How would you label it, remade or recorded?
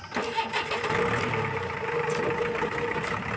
recorded